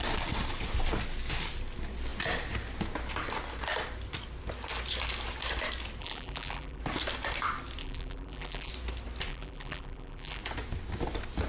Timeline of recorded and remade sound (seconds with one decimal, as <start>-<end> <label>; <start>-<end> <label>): 0.0-6.0 recorded; 6.0-6.8 remade; 6.8-7.8 recorded; 7.8-8.7 remade; 8.7-9.3 recorded; 9.3-10.4 remade; 10.4-11.5 recorded